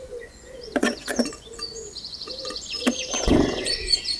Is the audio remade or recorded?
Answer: remade